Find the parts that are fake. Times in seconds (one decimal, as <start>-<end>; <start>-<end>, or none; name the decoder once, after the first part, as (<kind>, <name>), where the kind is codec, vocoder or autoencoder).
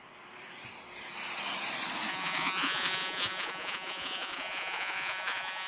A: 2.1-5.7 (vocoder, Vocos)